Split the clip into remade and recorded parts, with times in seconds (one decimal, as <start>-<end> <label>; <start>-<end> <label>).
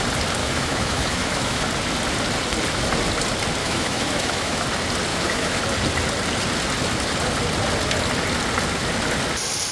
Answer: 0.0-0.4 recorded; 0.4-1.6 remade; 1.6-3.6 recorded; 3.6-4.6 remade; 4.6-5.1 recorded; 5.1-5.6 remade; 5.6-9.7 recorded